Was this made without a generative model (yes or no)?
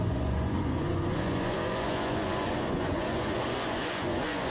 no